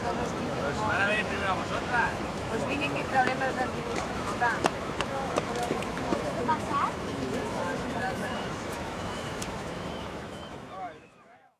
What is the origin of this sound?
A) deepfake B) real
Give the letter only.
A